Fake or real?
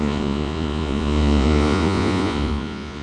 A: fake